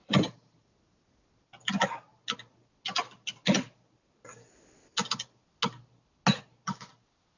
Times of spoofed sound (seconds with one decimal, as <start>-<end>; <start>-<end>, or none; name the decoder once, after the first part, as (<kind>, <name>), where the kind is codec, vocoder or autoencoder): 0.0-0.6 (vocoder, BigVGAN v2)